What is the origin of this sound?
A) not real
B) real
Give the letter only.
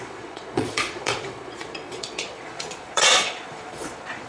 A